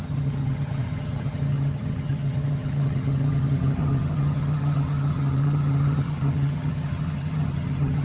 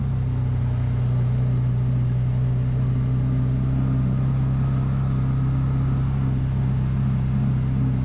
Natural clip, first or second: second